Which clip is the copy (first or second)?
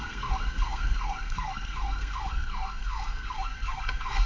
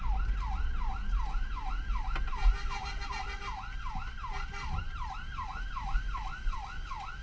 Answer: first